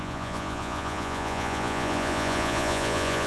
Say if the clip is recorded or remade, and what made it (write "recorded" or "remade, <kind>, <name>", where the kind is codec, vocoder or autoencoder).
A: remade, vocoder, Vocos